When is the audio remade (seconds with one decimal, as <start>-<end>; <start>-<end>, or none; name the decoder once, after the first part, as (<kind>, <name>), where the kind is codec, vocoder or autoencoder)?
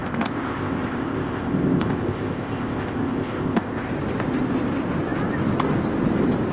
0.0-3.9 (codec, ZipCodec)